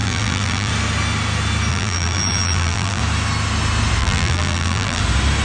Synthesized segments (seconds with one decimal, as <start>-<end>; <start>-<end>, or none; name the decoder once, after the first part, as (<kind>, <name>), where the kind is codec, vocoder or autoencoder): 0.0-0.7 (vocoder, BigVGAN v2); 1.7-3.0; 4.0-5.0